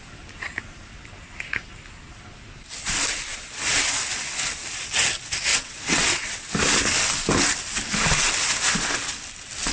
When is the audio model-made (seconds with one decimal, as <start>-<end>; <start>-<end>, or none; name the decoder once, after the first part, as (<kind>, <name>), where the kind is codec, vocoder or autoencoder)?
5.5-6.4 (vocoder, WaveNeXt)